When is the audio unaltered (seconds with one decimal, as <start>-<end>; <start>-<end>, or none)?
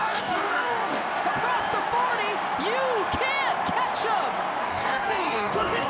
1.1-4.6